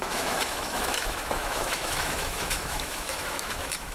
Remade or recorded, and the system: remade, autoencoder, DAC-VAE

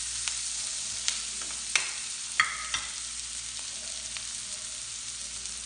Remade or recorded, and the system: recorded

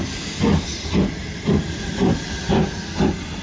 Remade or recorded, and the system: recorded